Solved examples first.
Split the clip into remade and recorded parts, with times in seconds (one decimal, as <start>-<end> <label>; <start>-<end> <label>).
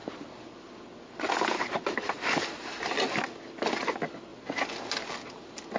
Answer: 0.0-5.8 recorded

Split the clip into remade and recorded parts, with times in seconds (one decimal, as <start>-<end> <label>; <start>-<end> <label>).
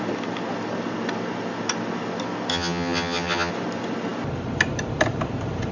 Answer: 0.0-2.5 recorded; 2.5-3.5 remade; 3.5-5.7 recorded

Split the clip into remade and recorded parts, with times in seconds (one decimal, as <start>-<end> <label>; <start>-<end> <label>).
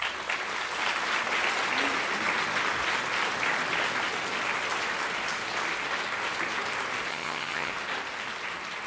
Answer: 0.0-7.1 recorded; 7.1-7.7 remade; 7.7-8.9 recorded